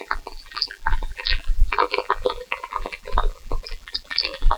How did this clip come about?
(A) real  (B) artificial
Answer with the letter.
B